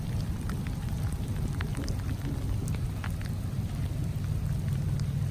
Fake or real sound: real